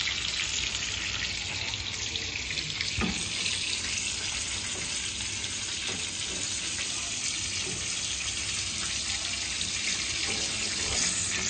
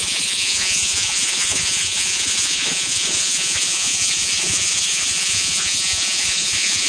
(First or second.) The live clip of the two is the first